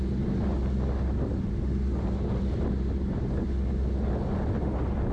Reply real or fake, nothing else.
real